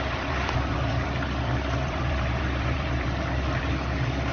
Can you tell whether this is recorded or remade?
remade